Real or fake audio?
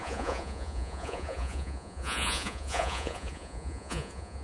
fake